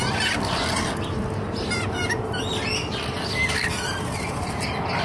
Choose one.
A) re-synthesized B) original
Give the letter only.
B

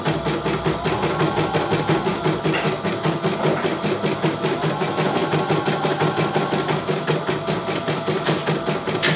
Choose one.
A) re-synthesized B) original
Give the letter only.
B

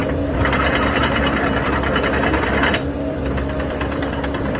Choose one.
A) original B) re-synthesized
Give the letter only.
B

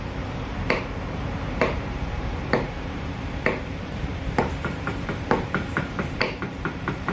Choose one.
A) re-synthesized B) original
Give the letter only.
A